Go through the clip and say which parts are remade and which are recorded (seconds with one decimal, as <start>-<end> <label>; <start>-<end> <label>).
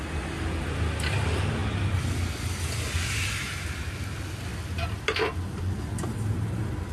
0.0-6.9 recorded